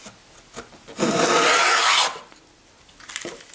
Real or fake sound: real